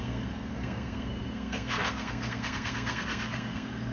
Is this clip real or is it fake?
fake